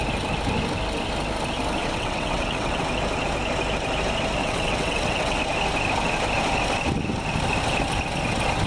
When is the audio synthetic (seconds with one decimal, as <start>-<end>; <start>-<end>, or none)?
1.8-2.8; 4.4-5.4